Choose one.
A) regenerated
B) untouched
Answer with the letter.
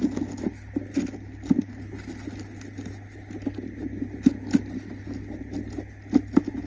B